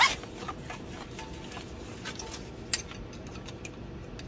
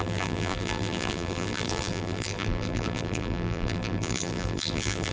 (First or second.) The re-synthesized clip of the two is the second